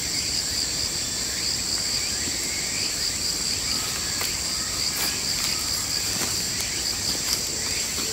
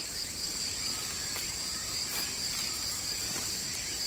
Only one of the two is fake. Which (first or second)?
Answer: second